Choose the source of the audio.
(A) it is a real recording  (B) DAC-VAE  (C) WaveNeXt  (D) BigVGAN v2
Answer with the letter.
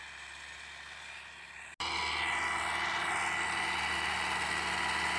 A